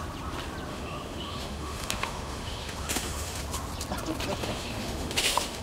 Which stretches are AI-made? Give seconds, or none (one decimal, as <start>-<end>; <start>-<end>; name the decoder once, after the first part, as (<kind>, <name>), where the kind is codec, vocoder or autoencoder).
0.7-3.4 (autoencoder, DAC-VAE); 4.4-5.6